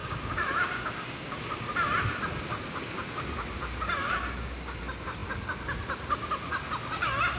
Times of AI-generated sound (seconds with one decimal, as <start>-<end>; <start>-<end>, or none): 0.0-1.7; 4.0-4.8